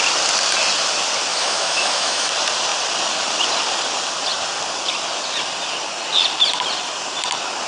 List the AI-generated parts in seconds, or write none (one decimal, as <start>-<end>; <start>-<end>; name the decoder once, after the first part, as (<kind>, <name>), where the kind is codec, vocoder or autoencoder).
1.3-2.3 (autoencoder, DAC-VAE)